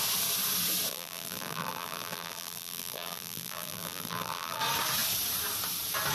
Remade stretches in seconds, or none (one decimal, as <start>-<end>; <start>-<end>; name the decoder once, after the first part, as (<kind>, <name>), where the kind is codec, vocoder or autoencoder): 0.9-4.6 (vocoder, BigVGAN v2)